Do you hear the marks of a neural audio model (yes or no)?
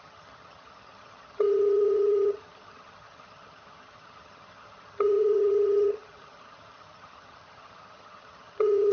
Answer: yes